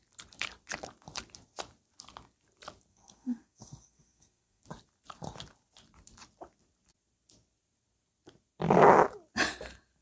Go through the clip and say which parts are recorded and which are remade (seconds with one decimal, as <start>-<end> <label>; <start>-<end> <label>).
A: 0.0-2.9 recorded; 2.9-4.6 remade; 4.6-10.0 recorded